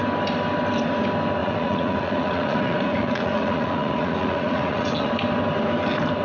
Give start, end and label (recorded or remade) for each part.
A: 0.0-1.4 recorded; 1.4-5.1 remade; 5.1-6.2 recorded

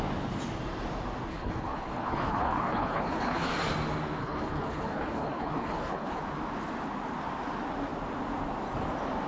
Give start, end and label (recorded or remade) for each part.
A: 0.0-1.3 recorded; 1.3-3.5 remade; 3.5-4.2 recorded; 4.2-6.2 remade; 6.2-9.3 recorded

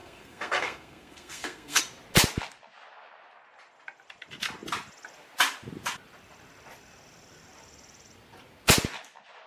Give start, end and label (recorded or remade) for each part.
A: 0.0-1.8 remade; 1.8-9.5 recorded

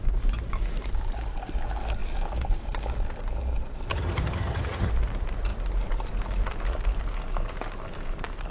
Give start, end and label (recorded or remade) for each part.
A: 0.0-3.9 recorded; 3.9-4.9 remade; 4.9-8.5 recorded